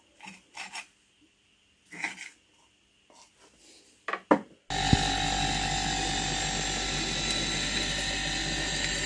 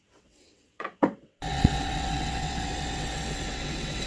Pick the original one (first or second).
first